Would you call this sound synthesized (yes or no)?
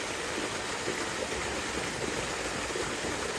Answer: no